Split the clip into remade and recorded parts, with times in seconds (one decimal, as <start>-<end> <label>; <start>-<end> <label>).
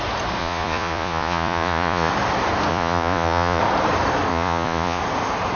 0.0-0.4 recorded; 0.4-2.1 remade; 2.1-2.7 recorded; 2.7-3.6 remade; 3.6-4.3 recorded; 4.3-5.0 remade; 5.0-5.5 recorded